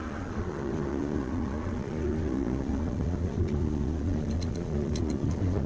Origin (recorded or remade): remade